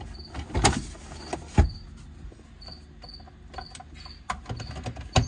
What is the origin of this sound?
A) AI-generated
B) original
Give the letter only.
B